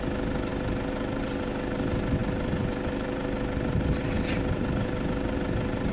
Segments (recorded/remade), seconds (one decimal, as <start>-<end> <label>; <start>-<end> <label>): 0.0-5.9 recorded